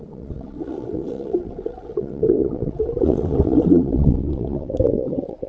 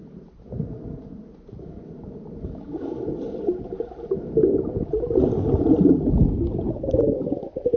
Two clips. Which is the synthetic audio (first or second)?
first